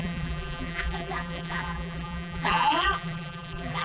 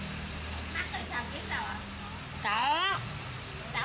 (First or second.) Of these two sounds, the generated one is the first